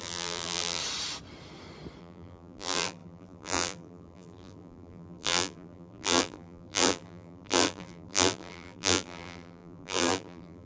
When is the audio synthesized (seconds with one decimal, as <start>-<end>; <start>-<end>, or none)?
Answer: 0.0-0.8; 2.0-10.7